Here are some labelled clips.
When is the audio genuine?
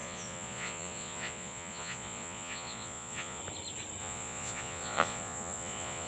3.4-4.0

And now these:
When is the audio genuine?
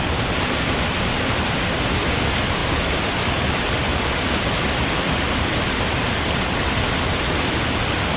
0.0-8.2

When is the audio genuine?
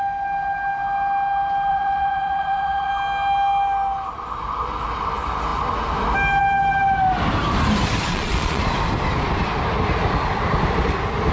0.0-1.7; 2.9-8.1; 8.6-11.3